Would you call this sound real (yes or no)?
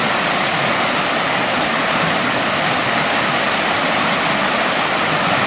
yes